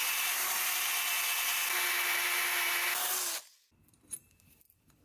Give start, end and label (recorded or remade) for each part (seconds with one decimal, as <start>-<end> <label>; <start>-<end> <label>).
0.0-0.9 remade; 0.9-3.9 recorded; 3.9-5.0 remade